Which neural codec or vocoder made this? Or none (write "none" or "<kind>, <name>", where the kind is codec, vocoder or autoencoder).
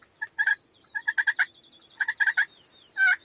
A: none